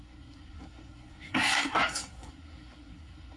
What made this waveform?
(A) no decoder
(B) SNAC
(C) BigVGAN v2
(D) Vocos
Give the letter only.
B